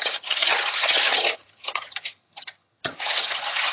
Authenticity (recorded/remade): remade